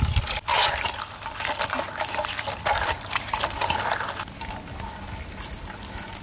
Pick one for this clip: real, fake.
real